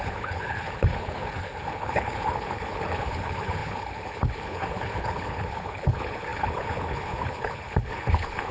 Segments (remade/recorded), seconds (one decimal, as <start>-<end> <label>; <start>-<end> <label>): 0.0-8.5 remade